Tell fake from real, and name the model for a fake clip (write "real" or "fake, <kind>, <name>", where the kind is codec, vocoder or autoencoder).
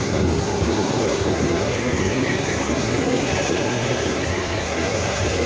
fake, codec, SNAC